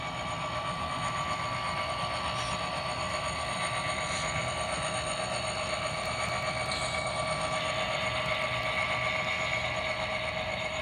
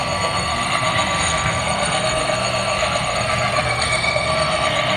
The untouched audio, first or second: first